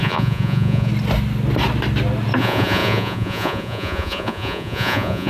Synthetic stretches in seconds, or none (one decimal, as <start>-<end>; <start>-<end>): 0.0-0.9; 2.4-5.3